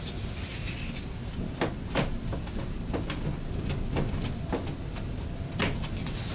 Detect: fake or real real